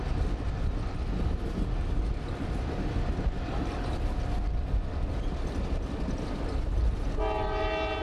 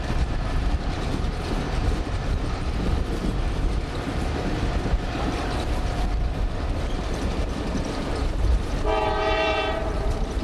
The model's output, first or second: second